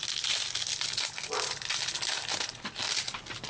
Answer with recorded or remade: recorded